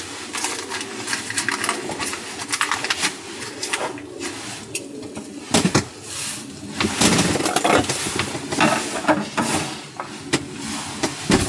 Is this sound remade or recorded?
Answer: recorded